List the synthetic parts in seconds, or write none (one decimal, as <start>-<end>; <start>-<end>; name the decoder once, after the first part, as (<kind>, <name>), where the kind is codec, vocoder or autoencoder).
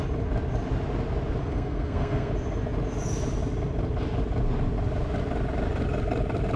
1.4-2.3 (codec, SNAC)